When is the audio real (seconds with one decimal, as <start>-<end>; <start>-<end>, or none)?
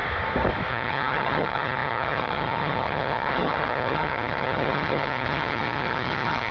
0.0-0.7